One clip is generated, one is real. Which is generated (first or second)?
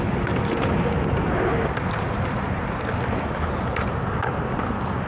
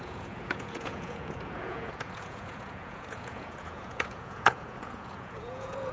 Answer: second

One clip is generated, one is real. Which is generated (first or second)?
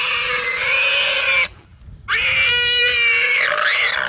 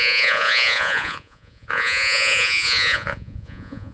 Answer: second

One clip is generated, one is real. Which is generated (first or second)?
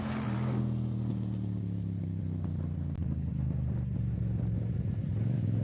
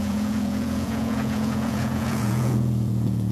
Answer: second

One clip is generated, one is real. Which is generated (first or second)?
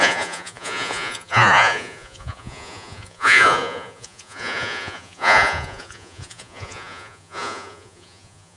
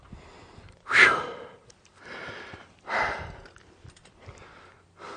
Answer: first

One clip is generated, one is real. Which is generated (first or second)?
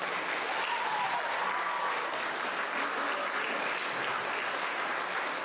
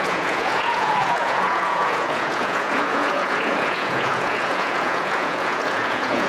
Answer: second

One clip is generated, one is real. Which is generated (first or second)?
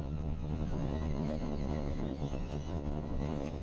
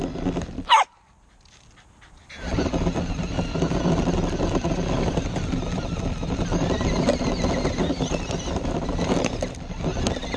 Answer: first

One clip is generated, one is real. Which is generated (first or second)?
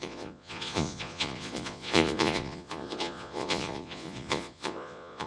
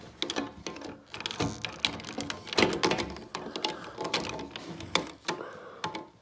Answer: first